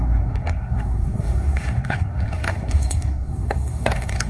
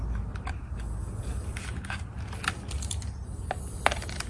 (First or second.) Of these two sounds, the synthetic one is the first